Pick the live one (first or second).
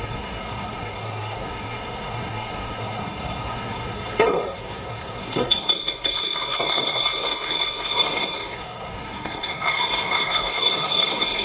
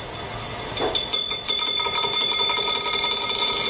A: second